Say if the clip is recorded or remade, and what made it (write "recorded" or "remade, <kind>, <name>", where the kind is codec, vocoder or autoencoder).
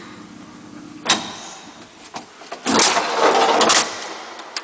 recorded